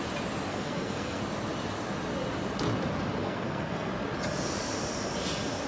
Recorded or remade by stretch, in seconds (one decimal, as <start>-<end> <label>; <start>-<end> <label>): 0.0-0.5 recorded; 0.5-1.2 remade; 1.2-3.2 recorded; 3.2-3.9 remade; 3.9-5.7 recorded